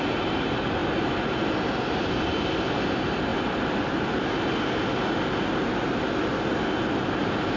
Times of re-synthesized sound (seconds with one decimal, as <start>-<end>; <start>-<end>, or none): none